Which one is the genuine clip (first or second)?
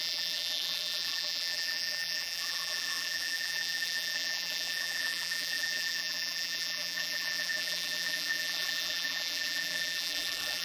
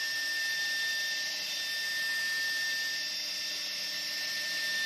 second